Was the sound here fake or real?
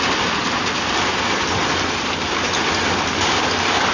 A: real